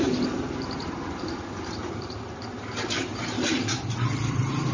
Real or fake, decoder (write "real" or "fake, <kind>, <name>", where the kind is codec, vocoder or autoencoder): fake, vocoder, BigVGAN v2